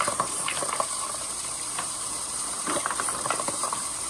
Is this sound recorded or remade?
remade